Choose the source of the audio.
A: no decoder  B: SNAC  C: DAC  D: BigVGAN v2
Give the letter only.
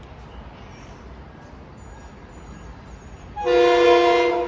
A